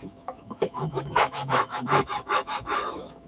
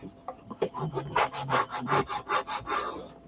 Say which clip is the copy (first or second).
first